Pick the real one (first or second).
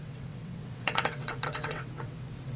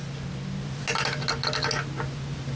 second